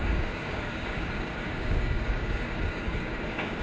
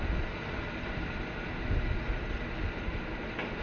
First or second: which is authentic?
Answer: second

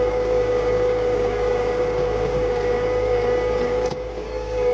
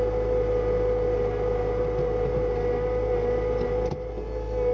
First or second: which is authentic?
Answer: second